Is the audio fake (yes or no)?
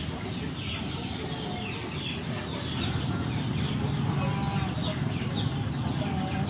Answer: no